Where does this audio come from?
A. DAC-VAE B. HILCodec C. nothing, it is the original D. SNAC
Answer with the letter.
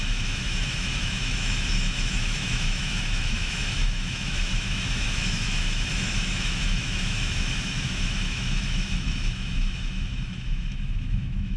A